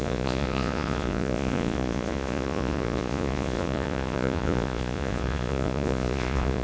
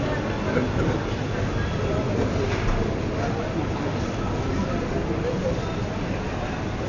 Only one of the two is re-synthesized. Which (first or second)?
first